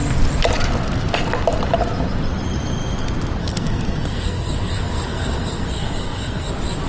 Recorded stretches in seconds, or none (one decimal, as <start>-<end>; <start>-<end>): 0.0-3.4; 6.5-6.9